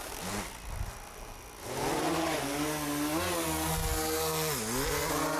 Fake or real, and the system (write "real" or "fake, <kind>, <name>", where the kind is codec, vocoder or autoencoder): real